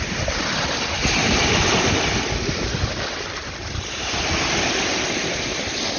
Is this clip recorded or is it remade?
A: recorded